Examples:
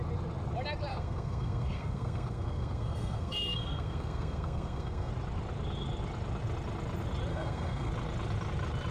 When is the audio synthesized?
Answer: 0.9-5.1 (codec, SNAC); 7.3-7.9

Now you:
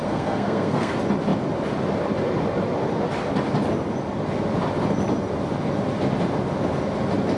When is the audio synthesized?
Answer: 0.0-0.9 (codec, SNAC)